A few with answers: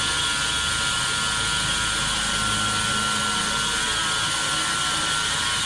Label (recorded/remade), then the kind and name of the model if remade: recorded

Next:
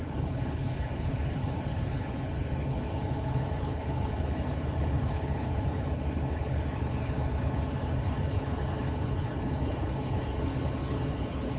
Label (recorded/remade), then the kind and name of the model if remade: remade, codec, HILCodec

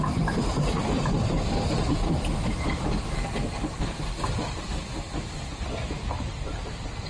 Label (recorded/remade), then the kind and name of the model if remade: recorded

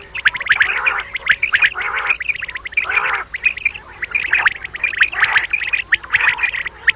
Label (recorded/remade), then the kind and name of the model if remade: recorded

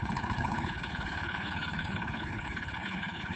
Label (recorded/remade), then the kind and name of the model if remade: remade, codec, HILCodec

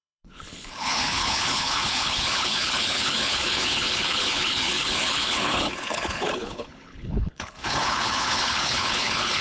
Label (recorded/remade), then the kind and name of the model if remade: remade, codec, HILCodec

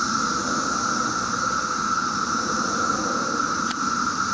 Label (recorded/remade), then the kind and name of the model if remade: recorded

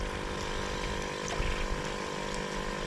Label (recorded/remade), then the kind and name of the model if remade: recorded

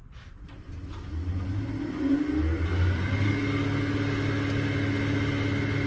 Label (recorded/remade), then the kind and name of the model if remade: recorded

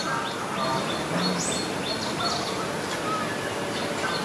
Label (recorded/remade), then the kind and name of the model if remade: recorded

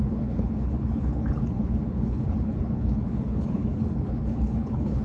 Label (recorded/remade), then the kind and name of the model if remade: remade, codec, HILCodec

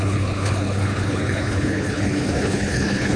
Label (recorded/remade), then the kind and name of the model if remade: remade, codec, HILCodec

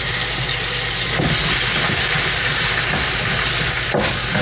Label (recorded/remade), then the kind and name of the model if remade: recorded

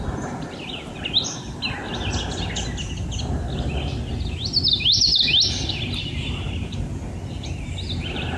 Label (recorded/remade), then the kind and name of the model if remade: recorded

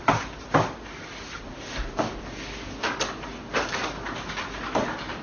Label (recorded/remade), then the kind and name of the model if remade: recorded